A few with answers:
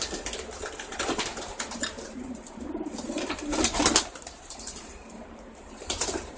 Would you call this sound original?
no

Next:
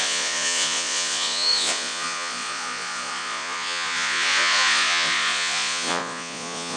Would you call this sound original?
no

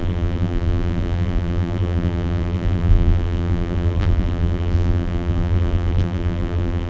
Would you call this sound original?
no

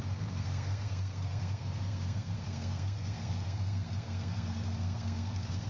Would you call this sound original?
no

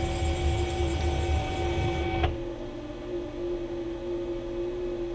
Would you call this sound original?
yes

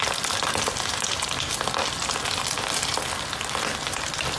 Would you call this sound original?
yes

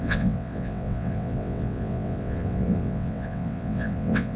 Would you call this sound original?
no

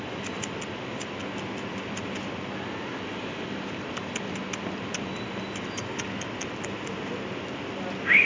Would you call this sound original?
yes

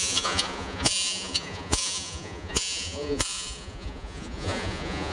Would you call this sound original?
no